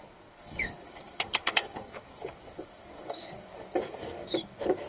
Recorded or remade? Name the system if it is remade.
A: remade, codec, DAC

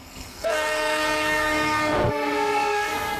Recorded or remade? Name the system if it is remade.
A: remade, codec, SNAC